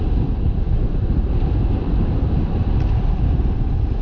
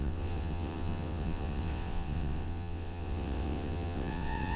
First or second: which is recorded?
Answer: first